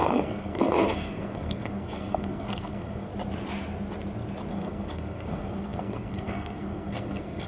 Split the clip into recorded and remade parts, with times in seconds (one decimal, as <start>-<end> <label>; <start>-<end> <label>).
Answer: 0.0-3.1 remade; 3.1-4.5 recorded; 4.5-7.5 remade